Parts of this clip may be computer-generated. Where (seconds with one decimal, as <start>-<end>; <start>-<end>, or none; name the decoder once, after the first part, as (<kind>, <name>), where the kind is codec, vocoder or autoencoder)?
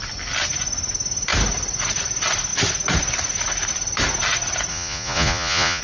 4.7-5.8 (vocoder, Vocos)